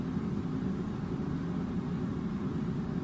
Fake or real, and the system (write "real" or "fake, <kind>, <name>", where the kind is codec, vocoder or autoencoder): real